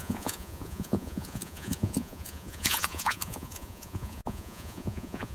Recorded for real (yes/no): no